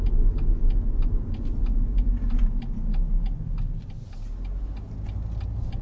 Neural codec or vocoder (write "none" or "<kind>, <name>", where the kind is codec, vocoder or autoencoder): none